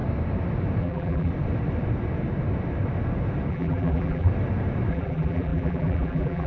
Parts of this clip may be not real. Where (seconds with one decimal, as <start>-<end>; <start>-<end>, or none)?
0.8-1.3; 3.5-4.3; 4.9-6.5